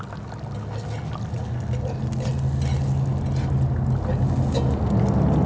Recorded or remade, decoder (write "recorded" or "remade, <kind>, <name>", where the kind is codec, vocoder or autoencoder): recorded